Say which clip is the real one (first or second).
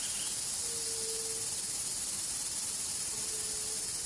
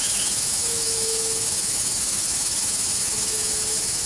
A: first